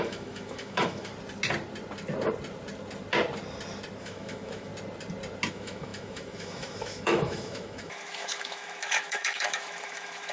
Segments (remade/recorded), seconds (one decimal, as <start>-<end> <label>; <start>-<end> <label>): 0.0-1.1 remade; 1.1-4.0 recorded; 4.0-4.7 remade; 4.7-5.5 recorded; 5.5-10.3 remade